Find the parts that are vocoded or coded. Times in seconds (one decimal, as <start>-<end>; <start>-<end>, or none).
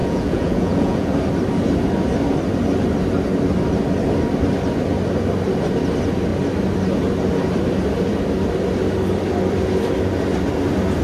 0.0-1.1